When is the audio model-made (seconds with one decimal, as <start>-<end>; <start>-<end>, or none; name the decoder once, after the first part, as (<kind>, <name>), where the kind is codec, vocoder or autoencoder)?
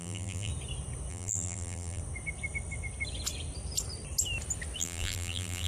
0.0-0.5 (vocoder, BigVGAN v2); 1.1-2.0; 4.8-5.7